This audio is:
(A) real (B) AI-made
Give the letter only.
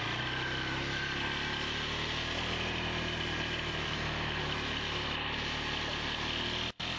A